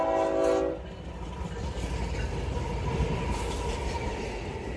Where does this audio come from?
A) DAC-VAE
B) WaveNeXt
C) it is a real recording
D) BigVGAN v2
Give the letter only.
C